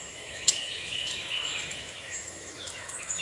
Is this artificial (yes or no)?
yes